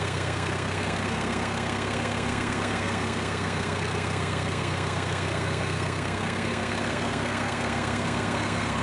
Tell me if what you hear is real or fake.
fake